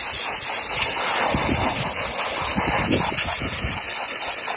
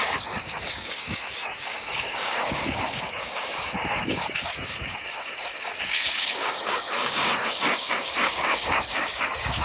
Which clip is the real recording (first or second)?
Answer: first